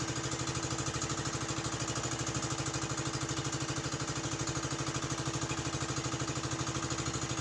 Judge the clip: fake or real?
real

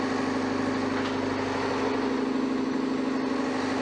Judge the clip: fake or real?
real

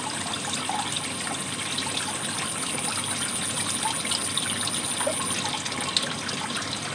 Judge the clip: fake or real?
real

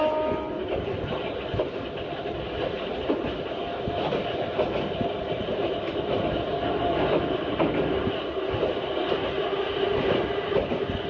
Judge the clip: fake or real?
real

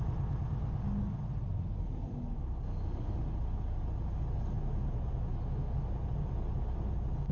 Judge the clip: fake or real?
real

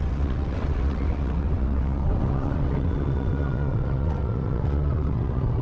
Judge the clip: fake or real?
fake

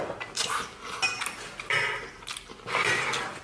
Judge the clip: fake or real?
real